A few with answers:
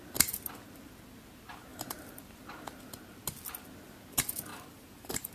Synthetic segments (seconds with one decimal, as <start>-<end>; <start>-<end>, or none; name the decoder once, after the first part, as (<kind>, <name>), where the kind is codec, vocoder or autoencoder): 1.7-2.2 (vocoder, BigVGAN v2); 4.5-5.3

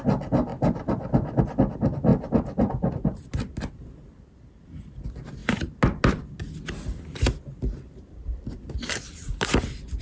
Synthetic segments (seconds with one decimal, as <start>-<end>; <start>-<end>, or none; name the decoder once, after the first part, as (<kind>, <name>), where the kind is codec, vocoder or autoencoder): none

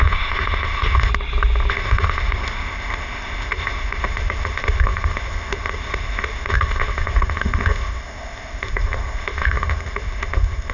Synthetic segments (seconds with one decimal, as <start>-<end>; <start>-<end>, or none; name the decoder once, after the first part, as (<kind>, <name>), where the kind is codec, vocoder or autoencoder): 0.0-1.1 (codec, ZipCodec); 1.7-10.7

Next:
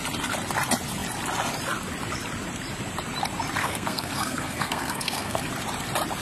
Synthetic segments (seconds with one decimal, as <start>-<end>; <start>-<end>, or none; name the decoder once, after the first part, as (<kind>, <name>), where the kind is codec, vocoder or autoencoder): 3.6-5.4 (codec, SNAC)

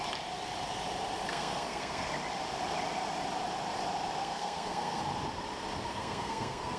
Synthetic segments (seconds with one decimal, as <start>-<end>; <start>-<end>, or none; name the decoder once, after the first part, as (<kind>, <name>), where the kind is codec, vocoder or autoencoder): 1.3-2.1 (codec, SNAC); 4.2-5.0; 5.9-6.8

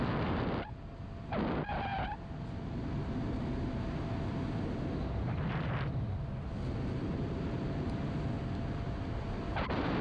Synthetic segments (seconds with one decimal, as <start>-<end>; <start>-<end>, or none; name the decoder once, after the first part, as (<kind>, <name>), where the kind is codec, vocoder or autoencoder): none

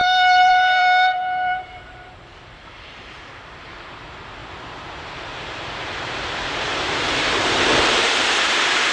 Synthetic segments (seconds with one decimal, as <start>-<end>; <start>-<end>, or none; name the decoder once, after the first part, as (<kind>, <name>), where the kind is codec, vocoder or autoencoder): 0.0-8.9 (vocoder, BigVGAN v2)

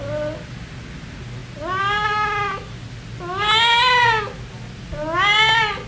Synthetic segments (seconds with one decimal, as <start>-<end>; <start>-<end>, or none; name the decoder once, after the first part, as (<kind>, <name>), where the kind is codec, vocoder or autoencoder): none